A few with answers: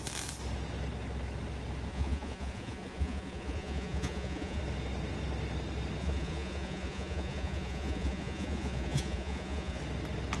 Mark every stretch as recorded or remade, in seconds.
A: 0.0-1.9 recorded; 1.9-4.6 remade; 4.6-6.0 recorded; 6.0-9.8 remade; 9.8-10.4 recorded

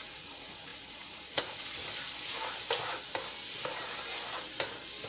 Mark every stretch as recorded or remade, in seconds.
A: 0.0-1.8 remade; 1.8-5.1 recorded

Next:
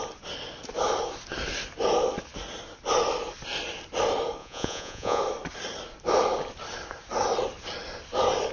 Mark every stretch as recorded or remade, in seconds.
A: 0.0-4.4 recorded; 4.4-5.2 remade; 5.2-8.5 recorded

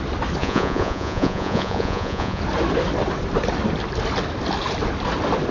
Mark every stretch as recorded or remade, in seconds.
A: 0.0-0.4 recorded; 0.4-2.4 remade; 2.4-5.5 recorded